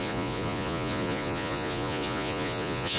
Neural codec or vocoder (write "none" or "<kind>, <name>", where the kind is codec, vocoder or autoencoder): vocoder, Vocos